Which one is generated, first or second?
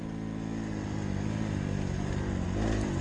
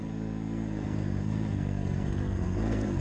second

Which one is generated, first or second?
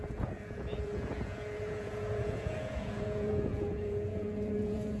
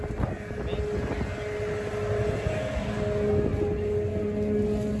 first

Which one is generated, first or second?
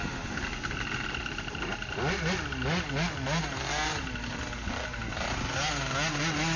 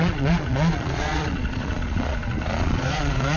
second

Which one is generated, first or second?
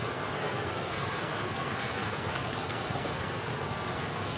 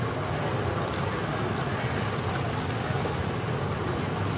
first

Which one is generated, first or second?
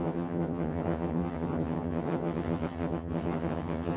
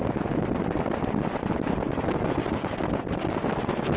first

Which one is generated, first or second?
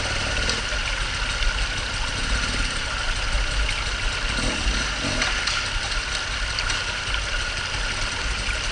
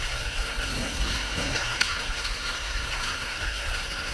second